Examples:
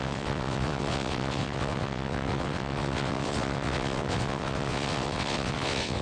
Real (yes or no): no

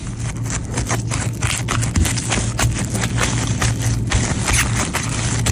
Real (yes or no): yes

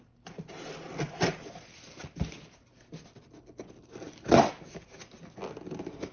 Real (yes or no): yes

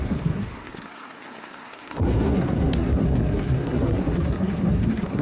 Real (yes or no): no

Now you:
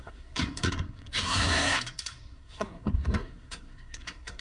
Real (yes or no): no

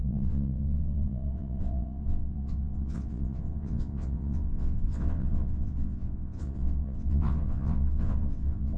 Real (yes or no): no